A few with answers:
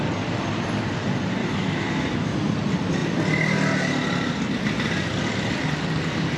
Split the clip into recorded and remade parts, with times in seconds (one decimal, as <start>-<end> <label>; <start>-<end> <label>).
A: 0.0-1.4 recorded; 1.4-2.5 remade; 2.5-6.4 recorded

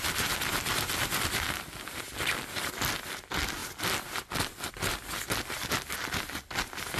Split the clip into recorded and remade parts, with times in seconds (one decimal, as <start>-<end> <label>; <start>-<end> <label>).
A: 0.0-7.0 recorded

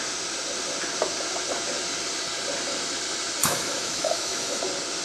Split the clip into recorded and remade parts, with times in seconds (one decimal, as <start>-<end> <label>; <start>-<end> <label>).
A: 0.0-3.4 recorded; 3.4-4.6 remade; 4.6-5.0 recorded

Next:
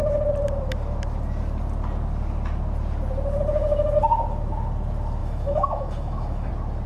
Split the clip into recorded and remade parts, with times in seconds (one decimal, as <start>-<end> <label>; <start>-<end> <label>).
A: 0.0-5.2 recorded; 5.2-6.5 remade; 6.5-6.9 recorded